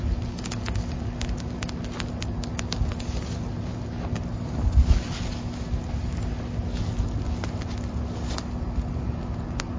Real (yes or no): yes